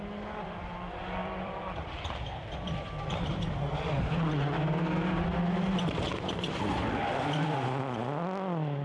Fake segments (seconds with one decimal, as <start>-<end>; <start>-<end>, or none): 1.2-4.0